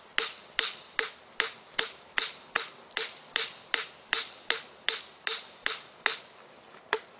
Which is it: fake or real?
real